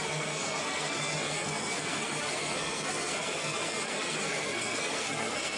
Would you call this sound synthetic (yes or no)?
yes